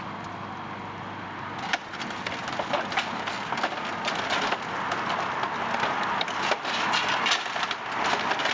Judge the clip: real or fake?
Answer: real